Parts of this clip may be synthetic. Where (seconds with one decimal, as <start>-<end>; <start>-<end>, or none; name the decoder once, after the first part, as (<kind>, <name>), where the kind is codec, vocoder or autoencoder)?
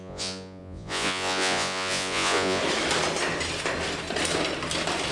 0.0-2.6 (vocoder, Vocos)